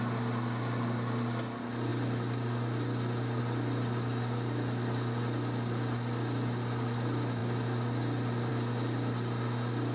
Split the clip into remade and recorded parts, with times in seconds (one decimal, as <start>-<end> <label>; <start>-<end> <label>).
0.0-9.9 recorded